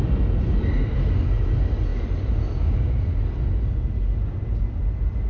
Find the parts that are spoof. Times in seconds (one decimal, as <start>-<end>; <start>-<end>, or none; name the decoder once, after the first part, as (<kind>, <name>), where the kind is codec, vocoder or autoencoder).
none